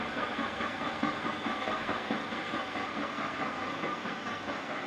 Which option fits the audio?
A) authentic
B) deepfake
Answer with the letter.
B